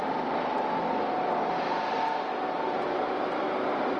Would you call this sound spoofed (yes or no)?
no